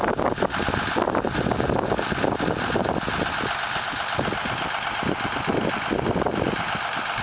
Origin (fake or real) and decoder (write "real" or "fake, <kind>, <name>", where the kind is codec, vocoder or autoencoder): real